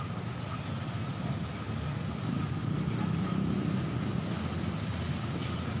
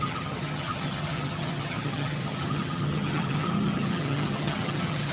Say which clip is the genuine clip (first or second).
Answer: first